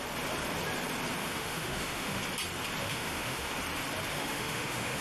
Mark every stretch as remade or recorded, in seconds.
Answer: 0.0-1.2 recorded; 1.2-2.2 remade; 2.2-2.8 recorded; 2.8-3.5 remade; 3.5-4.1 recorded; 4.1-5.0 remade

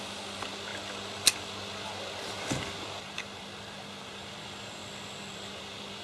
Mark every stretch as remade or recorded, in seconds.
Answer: 0.0-6.0 recorded

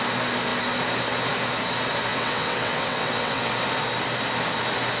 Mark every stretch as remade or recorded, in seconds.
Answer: 0.0-2.1 recorded; 2.1-3.5 remade; 3.5-5.0 recorded

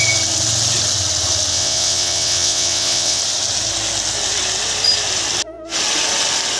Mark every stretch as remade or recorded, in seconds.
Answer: 0.0-1.5 recorded; 1.5-3.2 remade; 3.2-6.6 recorded

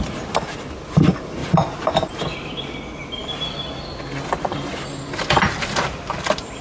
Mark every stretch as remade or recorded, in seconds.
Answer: 0.0-6.6 recorded

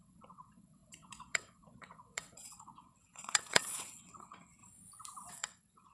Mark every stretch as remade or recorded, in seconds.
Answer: 0.0-4.6 remade; 4.6-5.3 recorded; 5.3-5.9 remade

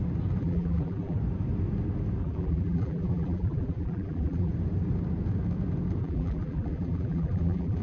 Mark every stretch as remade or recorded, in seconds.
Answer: 0.0-0.4 recorded; 0.4-1.2 remade; 1.2-2.2 recorded; 2.2-4.5 remade; 4.5-6.0 recorded; 6.0-7.8 remade